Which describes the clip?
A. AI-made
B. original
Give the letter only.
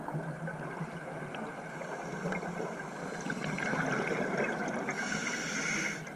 B